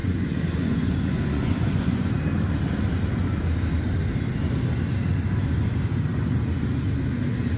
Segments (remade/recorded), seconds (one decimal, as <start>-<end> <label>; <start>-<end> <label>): 0.0-2.1 remade; 2.1-7.6 recorded